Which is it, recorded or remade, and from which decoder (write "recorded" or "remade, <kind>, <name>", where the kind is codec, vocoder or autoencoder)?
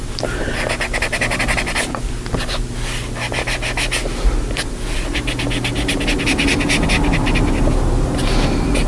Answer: recorded